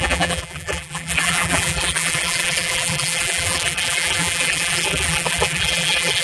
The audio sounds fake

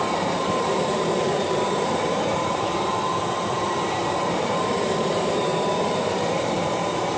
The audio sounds fake